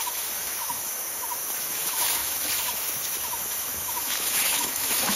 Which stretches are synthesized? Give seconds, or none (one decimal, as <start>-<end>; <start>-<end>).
0.0-5.2